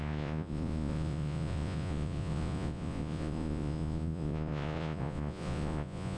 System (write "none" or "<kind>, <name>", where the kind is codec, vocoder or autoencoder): vocoder, Vocos